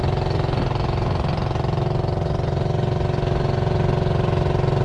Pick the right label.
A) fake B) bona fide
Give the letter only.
B